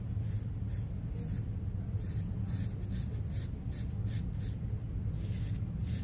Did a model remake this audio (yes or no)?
no